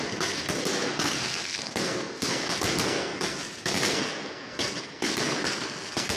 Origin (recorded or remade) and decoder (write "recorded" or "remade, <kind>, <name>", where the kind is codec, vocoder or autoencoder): remade, codec, SNAC